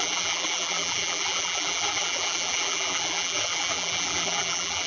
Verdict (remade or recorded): remade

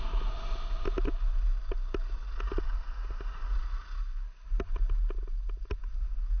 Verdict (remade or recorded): recorded